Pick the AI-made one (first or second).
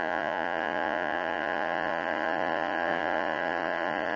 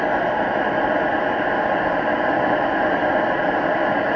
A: first